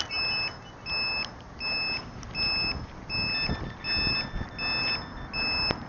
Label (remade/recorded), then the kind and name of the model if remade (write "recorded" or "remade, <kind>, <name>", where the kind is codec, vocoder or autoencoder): recorded